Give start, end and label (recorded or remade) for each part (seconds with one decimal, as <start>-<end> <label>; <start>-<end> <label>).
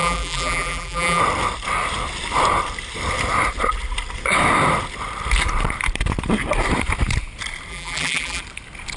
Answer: 0.0-1.2 remade; 1.2-7.7 recorded; 7.7-8.4 remade; 8.4-9.0 recorded